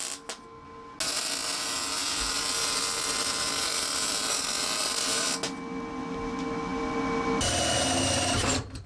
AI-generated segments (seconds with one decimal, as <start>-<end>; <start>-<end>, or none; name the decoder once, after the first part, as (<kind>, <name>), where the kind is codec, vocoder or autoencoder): none